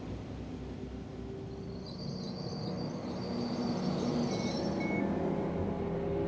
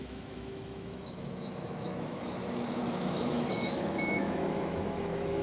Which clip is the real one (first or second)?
first